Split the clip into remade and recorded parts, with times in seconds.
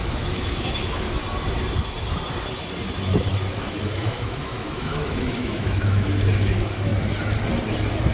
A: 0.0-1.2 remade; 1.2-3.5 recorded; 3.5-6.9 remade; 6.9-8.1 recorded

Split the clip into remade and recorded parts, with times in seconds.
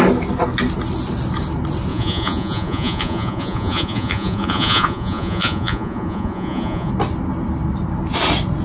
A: 0.0-1.9 recorded; 1.9-6.9 remade; 6.9-8.6 recorded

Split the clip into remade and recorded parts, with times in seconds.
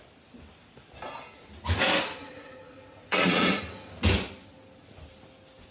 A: 0.0-2.2 recorded; 2.2-3.6 remade; 3.6-5.7 recorded